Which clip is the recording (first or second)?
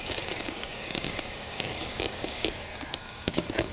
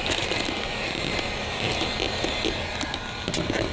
second